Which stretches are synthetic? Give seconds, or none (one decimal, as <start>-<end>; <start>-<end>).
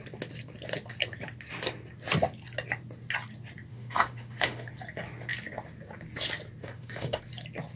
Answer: 3.7-4.7; 6.6-7.2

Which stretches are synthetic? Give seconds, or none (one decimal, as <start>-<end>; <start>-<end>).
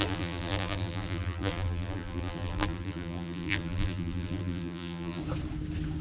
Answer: 0.0-5.2